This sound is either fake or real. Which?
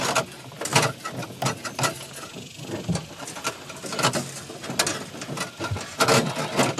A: real